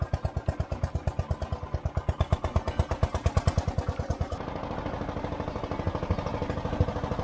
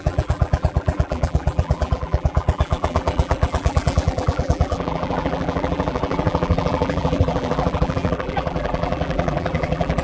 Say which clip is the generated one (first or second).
second